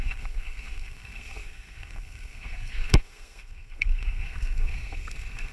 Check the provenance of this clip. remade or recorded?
remade